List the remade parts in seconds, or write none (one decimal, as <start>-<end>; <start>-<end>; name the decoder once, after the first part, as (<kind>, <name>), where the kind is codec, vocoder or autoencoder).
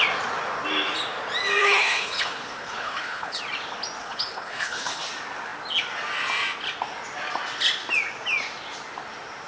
1.6-3.4 (codec, HILCodec); 4.0-5.0